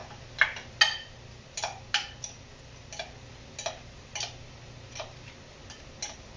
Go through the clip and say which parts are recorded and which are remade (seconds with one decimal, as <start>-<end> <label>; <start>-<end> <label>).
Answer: 0.0-6.4 recorded